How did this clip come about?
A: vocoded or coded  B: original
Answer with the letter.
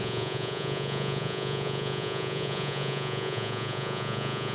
A